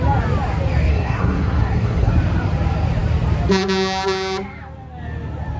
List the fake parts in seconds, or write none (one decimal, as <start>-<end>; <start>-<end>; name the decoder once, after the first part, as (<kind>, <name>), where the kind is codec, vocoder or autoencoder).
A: 0.9-2.1 (codec, SNAC)